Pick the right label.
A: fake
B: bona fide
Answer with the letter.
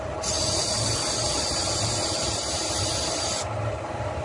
B